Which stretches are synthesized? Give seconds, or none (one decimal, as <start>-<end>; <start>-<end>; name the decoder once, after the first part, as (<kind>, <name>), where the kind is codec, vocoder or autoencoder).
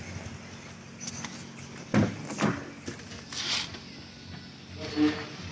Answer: none